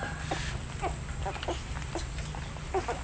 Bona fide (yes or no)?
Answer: yes